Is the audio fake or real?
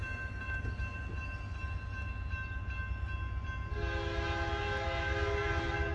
real